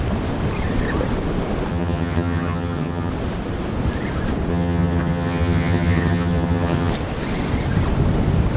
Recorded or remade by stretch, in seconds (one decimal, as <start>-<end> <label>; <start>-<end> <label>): 0.0-1.7 recorded; 1.7-3.1 remade; 3.1-4.5 recorded; 4.5-6.9 remade; 6.9-8.6 recorded